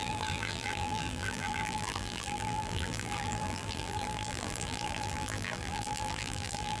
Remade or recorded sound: remade